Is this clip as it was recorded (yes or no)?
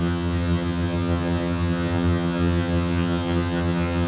no